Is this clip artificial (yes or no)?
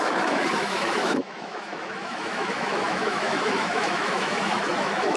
yes